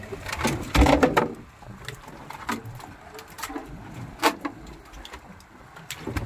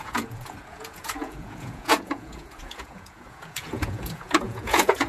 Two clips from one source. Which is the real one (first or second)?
first